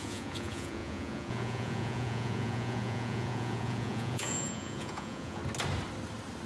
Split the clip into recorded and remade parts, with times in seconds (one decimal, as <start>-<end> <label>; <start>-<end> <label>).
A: 0.0-5.4 remade; 5.4-6.5 recorded